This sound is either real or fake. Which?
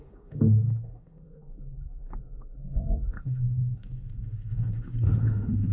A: fake